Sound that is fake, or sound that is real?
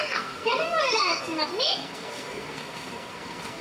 fake